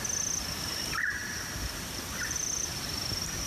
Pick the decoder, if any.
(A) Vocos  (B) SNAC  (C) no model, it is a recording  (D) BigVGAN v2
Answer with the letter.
C